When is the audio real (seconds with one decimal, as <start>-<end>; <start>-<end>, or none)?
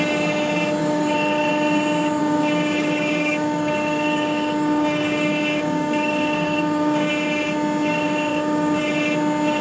0.0-0.8; 1.5-2.2; 7.1-8.3; 8.8-9.6